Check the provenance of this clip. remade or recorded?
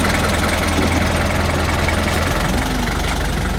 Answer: recorded